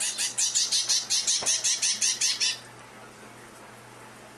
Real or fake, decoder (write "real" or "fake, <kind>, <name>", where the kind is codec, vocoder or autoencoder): real